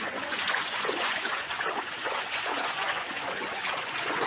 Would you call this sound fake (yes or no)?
yes